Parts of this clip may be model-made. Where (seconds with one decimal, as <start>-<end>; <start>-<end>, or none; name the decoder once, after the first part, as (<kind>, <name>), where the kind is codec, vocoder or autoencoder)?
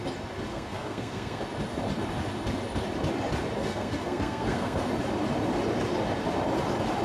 0.5-1.4 (codec, SNAC); 3.6-4.9